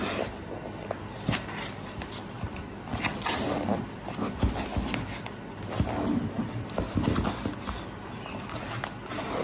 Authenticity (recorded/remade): recorded